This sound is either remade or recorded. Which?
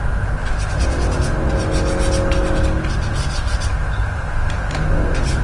recorded